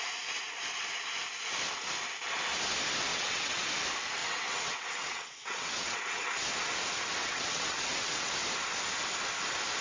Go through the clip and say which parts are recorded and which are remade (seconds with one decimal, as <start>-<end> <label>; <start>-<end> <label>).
0.0-3.1 recorded; 3.1-3.6 remade; 3.6-4.2 recorded; 4.2-6.3 remade; 6.3-7.2 recorded; 7.2-8.3 remade; 8.3-9.8 recorded